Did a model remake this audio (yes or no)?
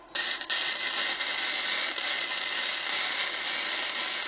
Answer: no